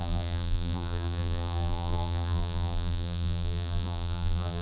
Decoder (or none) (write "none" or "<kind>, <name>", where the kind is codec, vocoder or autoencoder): vocoder, BigVGAN v2